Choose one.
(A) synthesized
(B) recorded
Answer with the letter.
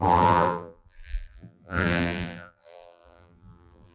A